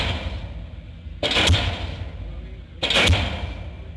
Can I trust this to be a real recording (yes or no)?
yes